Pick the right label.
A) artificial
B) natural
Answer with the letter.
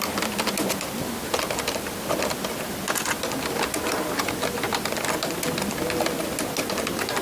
B